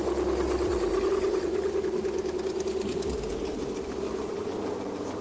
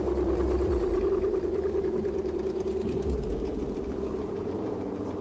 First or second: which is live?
first